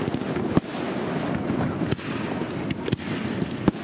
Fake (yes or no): no